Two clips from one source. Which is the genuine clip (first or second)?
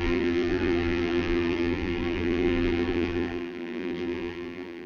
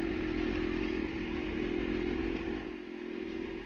second